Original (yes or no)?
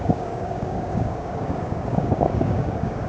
no